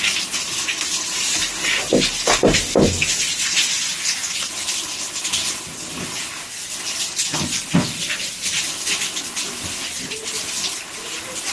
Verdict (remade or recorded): recorded